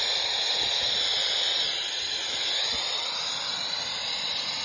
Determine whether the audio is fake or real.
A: real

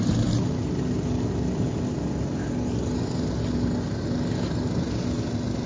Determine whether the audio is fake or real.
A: real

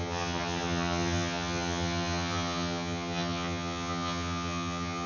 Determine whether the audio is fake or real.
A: fake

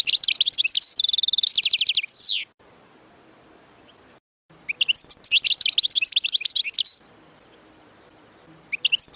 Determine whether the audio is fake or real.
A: real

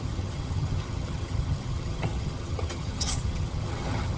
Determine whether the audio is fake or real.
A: fake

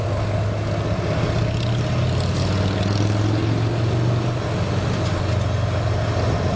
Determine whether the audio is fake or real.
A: real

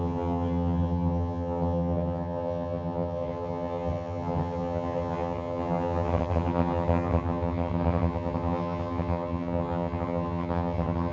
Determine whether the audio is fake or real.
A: fake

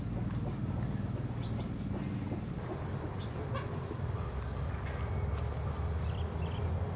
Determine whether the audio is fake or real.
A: real